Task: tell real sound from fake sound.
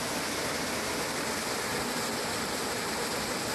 real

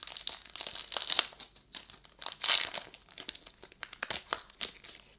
real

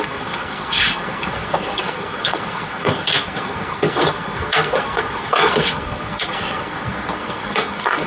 fake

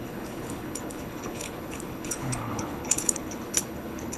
fake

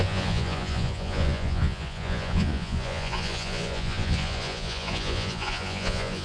fake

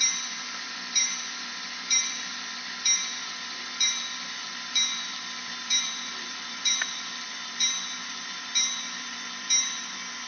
fake